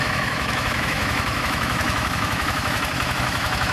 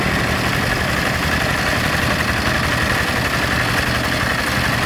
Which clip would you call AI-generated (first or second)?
first